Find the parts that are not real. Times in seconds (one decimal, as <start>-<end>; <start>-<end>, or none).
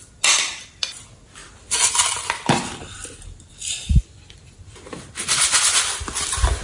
none